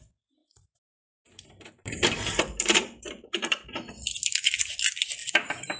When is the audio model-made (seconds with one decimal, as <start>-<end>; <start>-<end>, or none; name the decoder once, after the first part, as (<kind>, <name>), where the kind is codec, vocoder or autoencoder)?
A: 0.4-3.9 (vocoder, BigVGAN v2); 5.2-5.8